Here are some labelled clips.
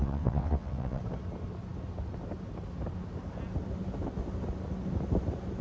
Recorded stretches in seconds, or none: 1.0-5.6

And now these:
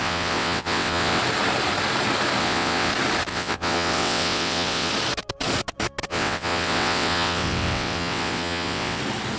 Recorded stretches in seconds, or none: 1.2-2.4; 2.9-3.3; 4.9-6.1; 9.0-9.4

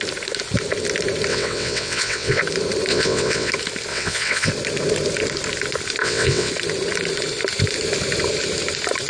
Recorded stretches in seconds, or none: 0.0-1.3; 2.4-2.9; 3.5-3.9; 4.5-6.0; 6.5-9.1